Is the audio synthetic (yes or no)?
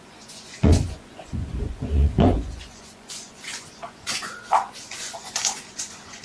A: yes